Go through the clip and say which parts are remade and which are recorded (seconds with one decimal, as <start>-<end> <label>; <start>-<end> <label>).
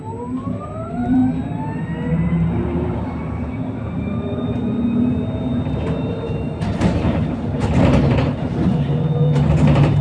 0.0-1.2 remade; 1.2-2.1 recorded; 2.1-10.0 remade